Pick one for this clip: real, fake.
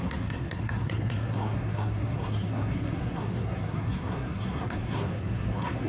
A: fake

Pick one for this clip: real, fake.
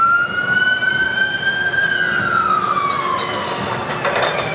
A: real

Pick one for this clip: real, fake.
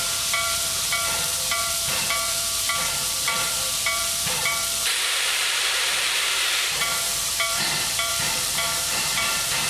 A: fake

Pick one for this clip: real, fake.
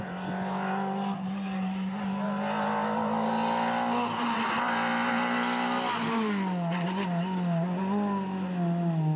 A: real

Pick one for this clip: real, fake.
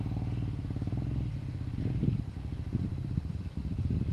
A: fake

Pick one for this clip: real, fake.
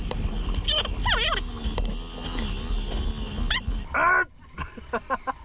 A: real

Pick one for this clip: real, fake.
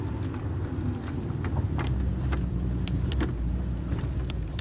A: fake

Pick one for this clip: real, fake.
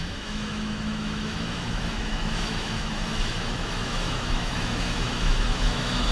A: fake